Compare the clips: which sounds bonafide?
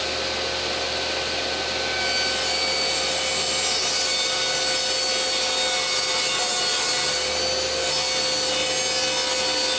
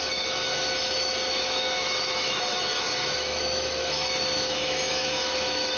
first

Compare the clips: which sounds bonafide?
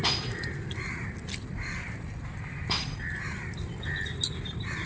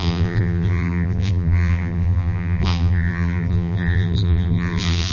first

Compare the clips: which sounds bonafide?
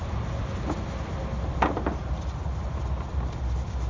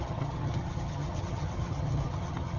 first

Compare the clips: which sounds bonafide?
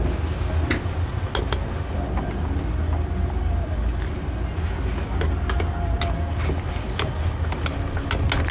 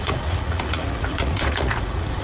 first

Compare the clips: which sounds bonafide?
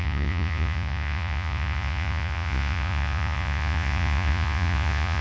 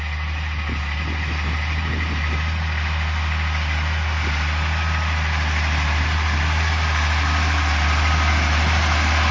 second